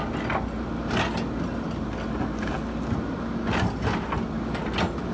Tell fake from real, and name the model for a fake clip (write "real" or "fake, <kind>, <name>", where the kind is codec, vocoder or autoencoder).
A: real